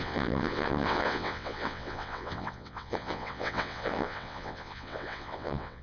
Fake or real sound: fake